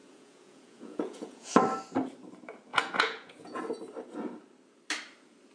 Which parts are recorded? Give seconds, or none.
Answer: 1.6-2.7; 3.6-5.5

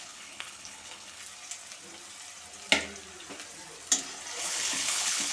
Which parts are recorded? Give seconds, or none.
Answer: 1.2-4.4

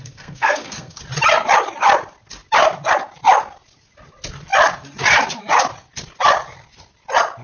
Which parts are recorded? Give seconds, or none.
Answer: 1.0-7.4